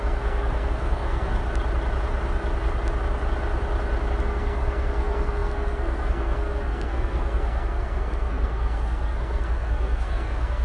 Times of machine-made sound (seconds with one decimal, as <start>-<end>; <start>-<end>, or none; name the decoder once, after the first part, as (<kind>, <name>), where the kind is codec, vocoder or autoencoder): 0.0-1.4 (codec, SNAC); 4.2-10.6